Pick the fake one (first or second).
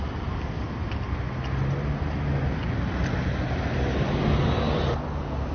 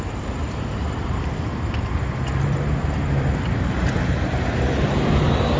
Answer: second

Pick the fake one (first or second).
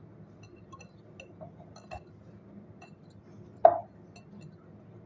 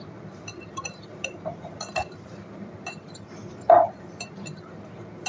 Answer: second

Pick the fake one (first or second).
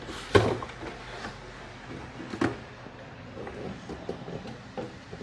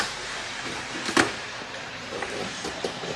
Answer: second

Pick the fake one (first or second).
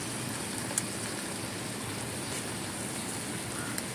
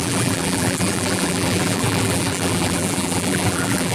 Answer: second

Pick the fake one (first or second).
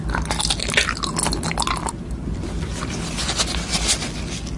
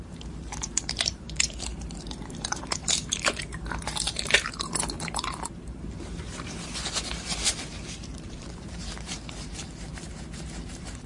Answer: second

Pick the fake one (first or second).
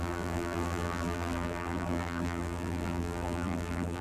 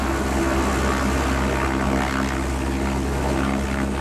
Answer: first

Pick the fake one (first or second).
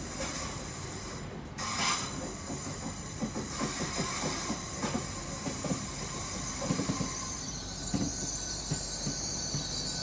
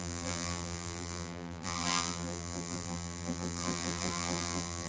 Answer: second